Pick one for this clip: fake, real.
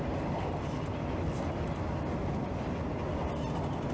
real